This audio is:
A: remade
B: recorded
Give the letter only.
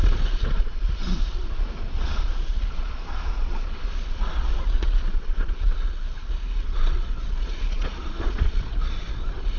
A